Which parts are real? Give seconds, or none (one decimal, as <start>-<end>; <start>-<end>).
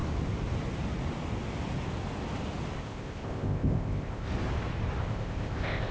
0.0-2.8; 4.3-5.0